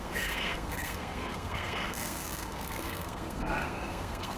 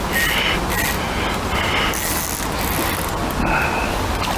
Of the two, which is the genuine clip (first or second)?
second